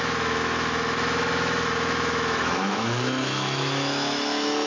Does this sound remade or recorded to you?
remade